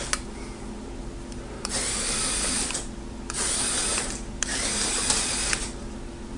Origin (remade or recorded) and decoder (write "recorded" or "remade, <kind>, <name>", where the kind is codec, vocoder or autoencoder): remade, vocoder, BigVGAN v2